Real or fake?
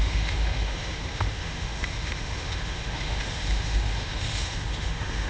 fake